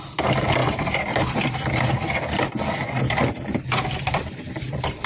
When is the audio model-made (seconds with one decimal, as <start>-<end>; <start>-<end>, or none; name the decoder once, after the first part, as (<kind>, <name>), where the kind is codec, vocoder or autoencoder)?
none